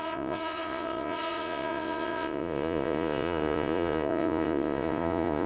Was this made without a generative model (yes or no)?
no